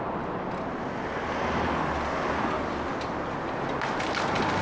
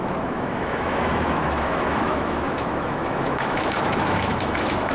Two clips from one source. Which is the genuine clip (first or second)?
first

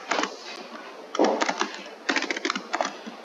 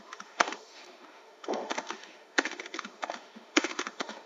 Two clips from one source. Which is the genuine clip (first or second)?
first